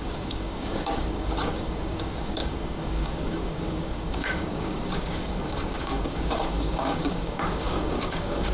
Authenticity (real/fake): fake